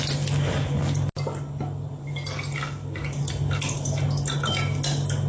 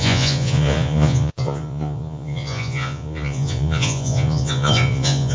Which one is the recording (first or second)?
first